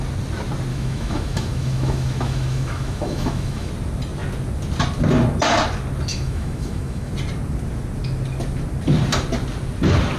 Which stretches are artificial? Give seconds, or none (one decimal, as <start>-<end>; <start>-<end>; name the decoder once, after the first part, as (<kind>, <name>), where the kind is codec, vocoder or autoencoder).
0.7-3.7 (autoencoder, DAC-VAE); 6.1-7.1